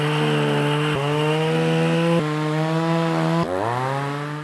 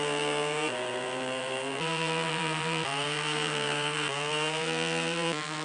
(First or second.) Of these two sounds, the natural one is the first